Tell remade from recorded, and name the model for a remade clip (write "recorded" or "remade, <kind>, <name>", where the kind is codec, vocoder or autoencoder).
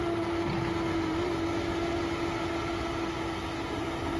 recorded